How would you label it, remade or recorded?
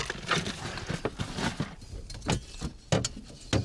recorded